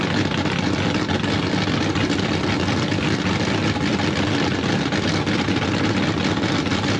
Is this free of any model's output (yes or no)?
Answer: yes